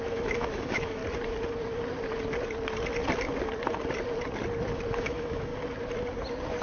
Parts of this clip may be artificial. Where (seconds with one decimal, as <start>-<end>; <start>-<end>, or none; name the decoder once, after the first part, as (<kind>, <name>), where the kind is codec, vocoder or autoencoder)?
0.0-1.0 (autoencoder, DAC-VAE); 5.0-5.5